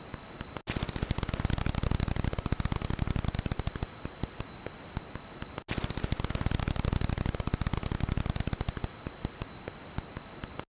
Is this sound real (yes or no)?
yes